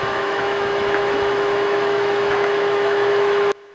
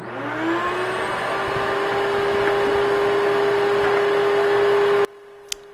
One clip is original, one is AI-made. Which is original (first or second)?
second